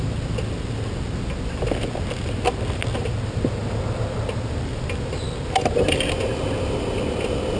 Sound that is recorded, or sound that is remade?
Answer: recorded